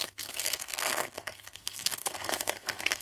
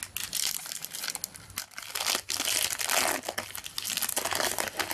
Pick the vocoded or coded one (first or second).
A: first